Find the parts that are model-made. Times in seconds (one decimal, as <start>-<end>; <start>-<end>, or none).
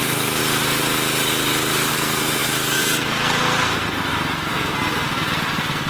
0.0-0.4; 1.9-5.9